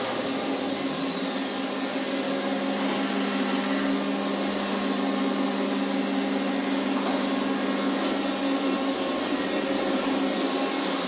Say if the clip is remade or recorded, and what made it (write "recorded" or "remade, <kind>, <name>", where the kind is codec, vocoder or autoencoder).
recorded